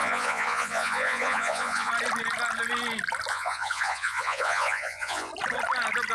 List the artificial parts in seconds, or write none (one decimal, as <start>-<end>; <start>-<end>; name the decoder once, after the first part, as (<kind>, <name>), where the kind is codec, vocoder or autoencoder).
0.0-1.9 (vocoder, Vocos); 3.3-5.3